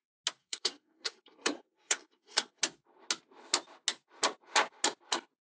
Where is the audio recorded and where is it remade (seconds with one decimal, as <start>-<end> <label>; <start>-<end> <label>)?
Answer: 0.0-0.4 recorded; 0.4-2.6 remade; 2.6-5.4 recorded